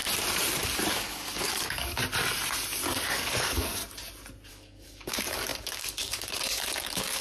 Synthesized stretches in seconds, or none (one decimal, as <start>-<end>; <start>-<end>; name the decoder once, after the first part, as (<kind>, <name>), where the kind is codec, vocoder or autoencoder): 0.9-2.0 (codec, DAC); 3.1-3.8; 4.5-7.2